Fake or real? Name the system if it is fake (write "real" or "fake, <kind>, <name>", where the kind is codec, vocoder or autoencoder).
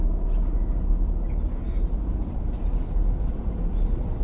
real